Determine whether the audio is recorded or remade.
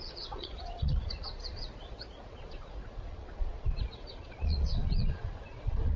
remade